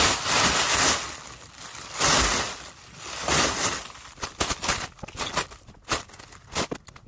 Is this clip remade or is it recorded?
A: recorded